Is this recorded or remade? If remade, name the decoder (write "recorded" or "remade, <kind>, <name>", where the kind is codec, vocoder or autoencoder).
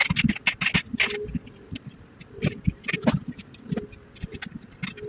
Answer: recorded